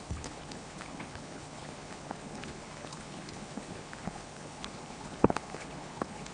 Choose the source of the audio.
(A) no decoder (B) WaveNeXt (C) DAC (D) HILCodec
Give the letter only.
D